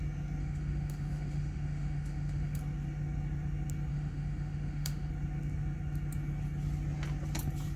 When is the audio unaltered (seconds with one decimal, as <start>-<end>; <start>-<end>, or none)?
0.0-0.4; 2.6-3.9; 5.1-7.8

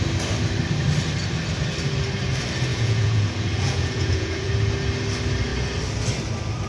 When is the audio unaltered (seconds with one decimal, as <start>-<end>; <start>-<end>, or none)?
0.0-2.7; 4.5-6.7

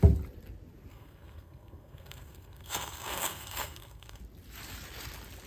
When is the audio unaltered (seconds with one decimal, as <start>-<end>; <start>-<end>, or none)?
0.0-0.9; 4.2-5.5

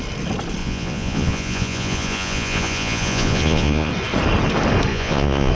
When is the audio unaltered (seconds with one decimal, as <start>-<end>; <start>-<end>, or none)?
0.0-0.6; 3.9-4.9

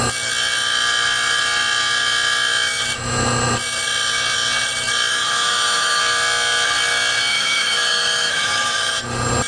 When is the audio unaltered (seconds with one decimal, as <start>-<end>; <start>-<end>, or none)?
0.0-5.1; 6.0-7.3; 9.0-9.5

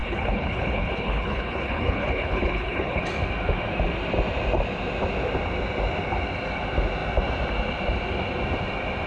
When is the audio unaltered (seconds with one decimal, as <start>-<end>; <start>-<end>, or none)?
3.0-9.1

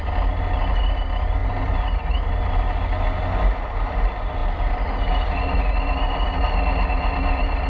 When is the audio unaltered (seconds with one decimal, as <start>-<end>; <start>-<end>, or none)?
0.0-7.7